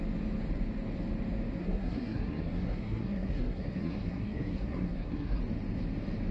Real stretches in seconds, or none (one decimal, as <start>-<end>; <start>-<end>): 0.0-1.6; 5.4-6.3